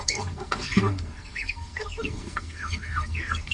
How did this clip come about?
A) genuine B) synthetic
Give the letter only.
B